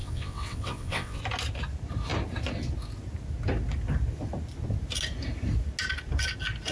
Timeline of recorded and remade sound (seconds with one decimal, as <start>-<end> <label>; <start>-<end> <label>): 0.0-1.2 remade; 1.2-6.7 recorded